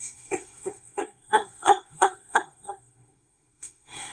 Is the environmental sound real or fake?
fake